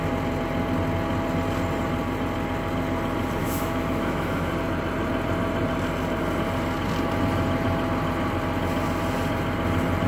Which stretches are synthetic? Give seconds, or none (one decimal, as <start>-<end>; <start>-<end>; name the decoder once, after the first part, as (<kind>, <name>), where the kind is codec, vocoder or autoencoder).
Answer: 3.4-4.5 (autoencoder, DAC-VAE)